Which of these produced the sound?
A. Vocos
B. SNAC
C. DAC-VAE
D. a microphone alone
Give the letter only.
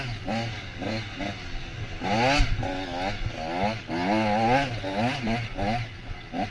D